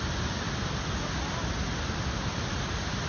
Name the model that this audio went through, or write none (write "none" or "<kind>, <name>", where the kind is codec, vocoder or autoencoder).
none